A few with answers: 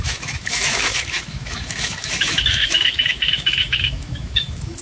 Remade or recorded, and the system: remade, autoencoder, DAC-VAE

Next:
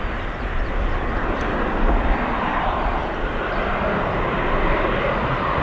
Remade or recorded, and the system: remade, vocoder, BigVGAN v2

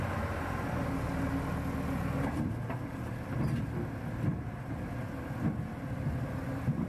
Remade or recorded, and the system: recorded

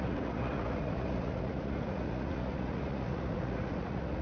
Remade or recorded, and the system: remade, vocoder, Vocos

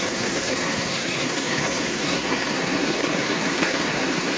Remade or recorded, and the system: remade, codec, SNAC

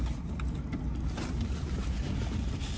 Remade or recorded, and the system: recorded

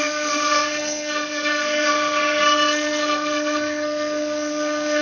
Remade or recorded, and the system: remade, codec, SNAC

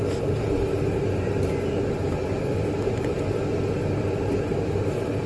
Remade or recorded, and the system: recorded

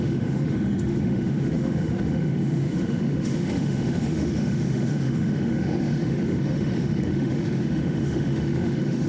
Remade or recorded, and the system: remade, autoencoder, DAC-VAE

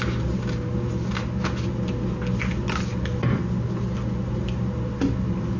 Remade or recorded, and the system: recorded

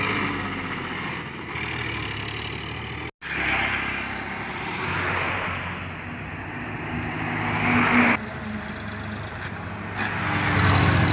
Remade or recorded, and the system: recorded